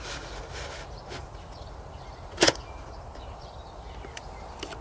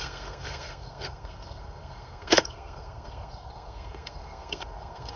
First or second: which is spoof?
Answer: second